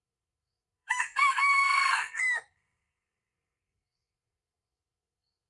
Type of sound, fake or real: fake